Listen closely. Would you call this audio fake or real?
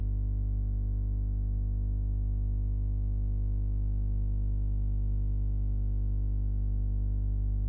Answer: fake